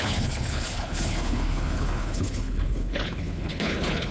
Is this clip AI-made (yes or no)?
yes